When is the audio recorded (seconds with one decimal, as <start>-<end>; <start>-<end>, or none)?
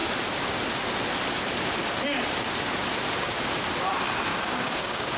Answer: 0.0-4.3